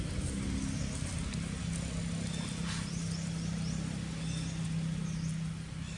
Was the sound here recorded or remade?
recorded